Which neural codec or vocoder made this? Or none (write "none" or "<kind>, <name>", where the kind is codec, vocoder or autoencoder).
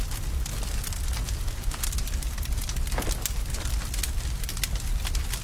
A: none